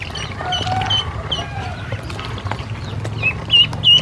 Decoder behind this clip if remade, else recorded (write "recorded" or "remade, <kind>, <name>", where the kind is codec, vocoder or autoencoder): recorded